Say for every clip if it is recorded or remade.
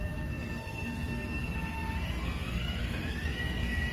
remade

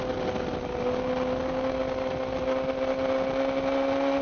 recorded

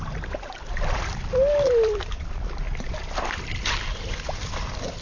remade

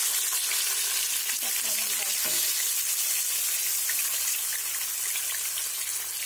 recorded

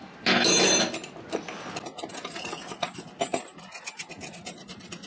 recorded